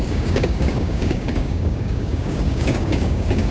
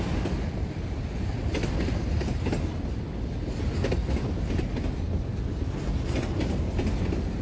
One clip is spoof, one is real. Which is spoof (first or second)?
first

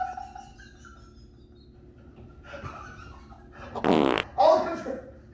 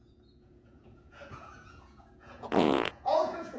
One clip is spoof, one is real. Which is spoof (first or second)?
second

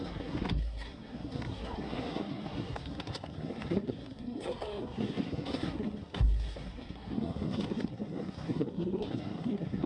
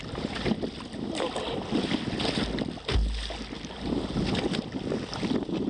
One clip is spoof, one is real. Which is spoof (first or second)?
first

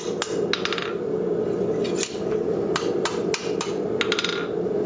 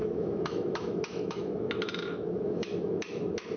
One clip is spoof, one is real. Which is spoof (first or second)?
second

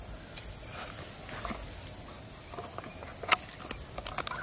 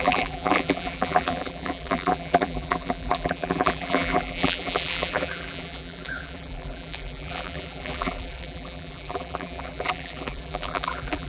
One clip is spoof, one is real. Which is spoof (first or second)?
second